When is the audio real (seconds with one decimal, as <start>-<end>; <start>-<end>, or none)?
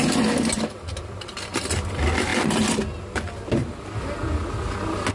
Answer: 0.0-5.1